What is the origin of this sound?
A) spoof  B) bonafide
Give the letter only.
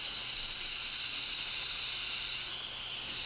B